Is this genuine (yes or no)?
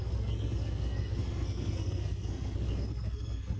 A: no